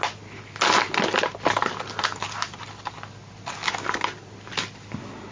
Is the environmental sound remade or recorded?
recorded